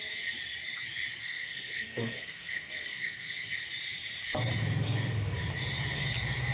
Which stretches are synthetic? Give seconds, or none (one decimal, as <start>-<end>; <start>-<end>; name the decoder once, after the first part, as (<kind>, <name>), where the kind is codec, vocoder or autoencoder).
1.2-3.5 (codec, SNAC)